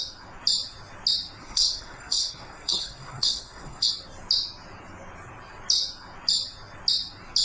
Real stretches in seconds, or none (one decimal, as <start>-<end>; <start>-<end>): 0.0-1.4; 3.9-7.4